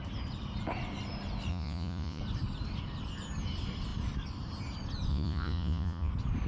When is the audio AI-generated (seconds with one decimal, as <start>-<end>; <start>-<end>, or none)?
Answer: 1.5-2.2; 5.1-6.1